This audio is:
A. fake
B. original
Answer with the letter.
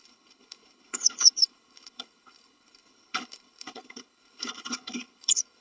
A